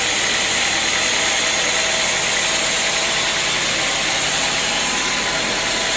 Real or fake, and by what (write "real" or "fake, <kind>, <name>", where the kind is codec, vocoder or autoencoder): real